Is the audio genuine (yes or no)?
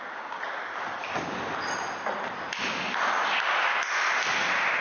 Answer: yes